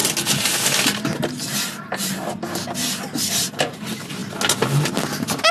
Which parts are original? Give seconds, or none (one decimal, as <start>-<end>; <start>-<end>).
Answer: 0.0-5.5